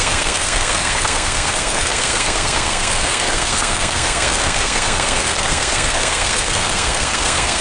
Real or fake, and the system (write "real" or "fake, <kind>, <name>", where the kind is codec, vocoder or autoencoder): fake, codec, SNAC